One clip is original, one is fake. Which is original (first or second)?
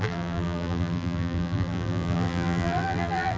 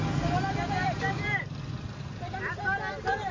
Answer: second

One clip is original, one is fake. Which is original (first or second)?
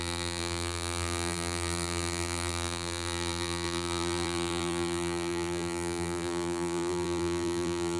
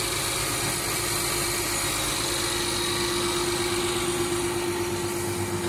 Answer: second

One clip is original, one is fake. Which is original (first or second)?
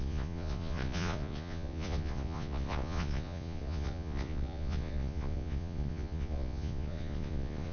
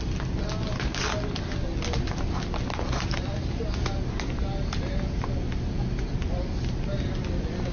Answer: second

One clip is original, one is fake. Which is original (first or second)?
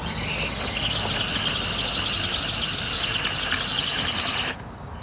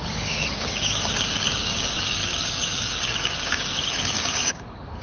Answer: first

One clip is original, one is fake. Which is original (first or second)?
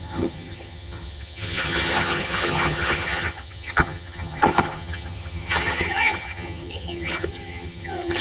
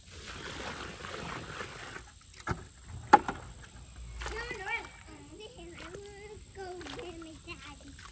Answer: second